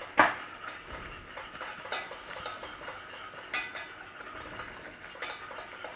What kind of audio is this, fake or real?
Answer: real